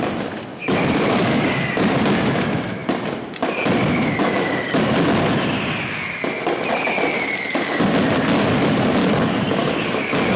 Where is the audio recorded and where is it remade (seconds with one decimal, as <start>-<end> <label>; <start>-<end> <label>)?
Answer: 0.0-0.5 recorded; 0.5-1.7 remade; 1.7-9.0 recorded; 9.0-10.4 remade